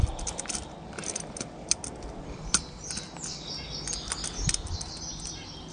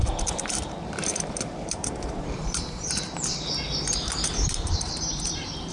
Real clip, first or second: first